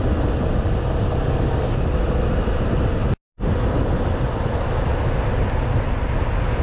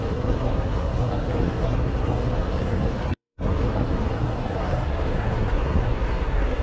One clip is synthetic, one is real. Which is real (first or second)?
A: first